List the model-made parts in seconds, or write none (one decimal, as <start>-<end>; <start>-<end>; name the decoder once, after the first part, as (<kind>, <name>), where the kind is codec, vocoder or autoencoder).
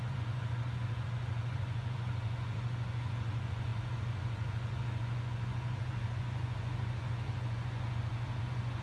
0.0-8.8 (vocoder, Vocos)